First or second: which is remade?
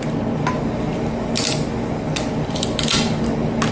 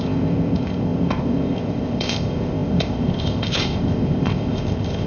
second